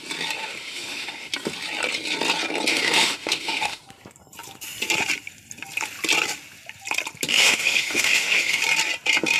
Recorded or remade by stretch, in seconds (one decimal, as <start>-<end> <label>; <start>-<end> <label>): 0.0-0.4 recorded; 0.4-1.3 remade; 1.3-2.7 recorded; 2.7-3.8 remade; 3.8-7.3 recorded; 7.3-8.6 remade; 8.6-9.4 recorded